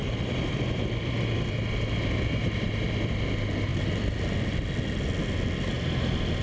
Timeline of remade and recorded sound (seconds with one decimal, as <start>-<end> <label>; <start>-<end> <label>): 0.0-3.1 remade; 3.1-3.7 recorded; 3.7-4.2 remade; 4.2-6.4 recorded